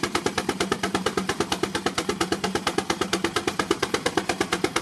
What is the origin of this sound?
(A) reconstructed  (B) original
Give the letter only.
A